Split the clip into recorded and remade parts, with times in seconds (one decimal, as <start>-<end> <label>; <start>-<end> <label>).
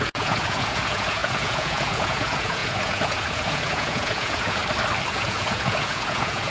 0.0-4.6 remade; 4.6-5.1 recorded; 5.1-6.5 remade